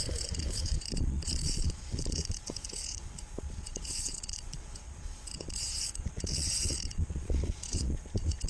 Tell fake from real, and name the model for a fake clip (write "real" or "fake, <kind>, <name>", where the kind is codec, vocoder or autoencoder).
fake, vocoder, Vocos